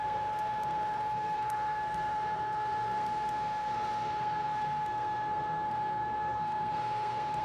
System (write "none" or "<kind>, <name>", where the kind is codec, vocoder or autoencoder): codec, SNAC